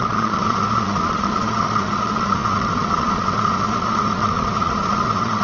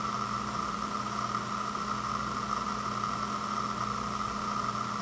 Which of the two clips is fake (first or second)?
first